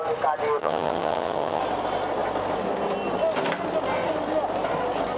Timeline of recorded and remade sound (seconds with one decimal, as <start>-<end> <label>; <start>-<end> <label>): 0.0-0.6 recorded; 0.6-1.6 remade; 1.6-5.2 recorded